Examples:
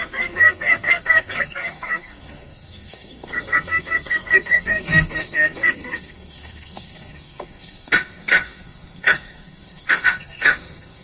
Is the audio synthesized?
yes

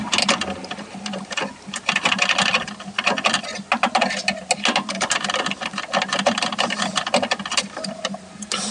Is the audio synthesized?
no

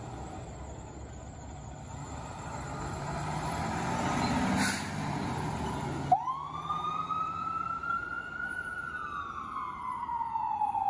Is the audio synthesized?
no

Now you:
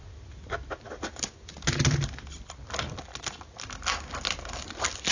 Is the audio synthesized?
no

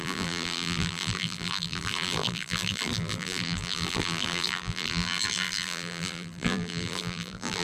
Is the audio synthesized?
yes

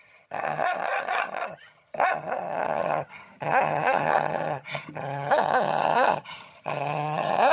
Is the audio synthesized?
yes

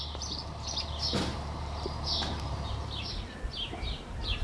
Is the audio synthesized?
yes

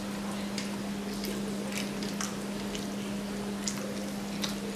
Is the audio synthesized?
no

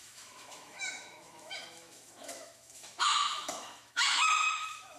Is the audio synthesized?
yes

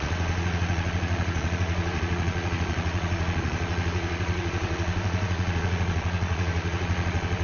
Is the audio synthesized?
yes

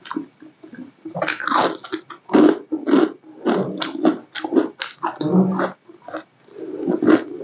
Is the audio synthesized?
no